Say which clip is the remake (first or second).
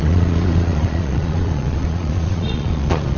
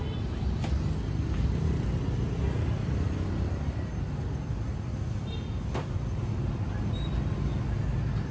first